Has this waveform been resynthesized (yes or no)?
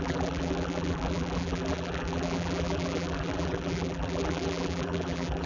yes